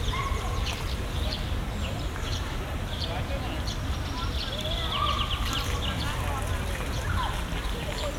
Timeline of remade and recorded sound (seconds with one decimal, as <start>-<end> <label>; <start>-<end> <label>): 0.0-0.6 recorded; 0.6-3.2 remade; 3.2-8.2 recorded